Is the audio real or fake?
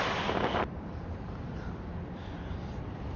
fake